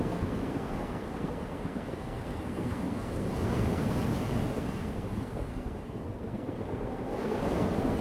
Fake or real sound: fake